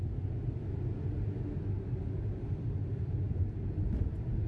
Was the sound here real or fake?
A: real